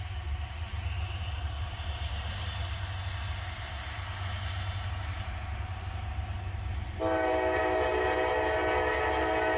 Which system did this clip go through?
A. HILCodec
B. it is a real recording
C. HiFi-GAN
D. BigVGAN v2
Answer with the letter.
B